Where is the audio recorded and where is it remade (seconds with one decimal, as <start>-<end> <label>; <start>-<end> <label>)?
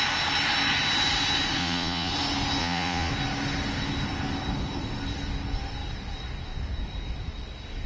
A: 0.0-1.6 recorded; 1.6-2.1 remade; 2.1-2.6 recorded; 2.6-3.1 remade; 3.1-7.9 recorded